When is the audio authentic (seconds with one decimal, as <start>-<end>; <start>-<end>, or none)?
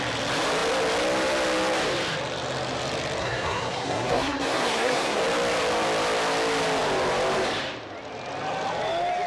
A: 0.0-3.2; 5.2-9.3